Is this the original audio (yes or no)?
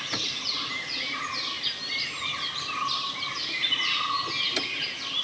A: yes